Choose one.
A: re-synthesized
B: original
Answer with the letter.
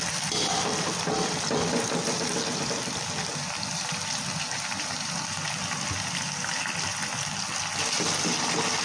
B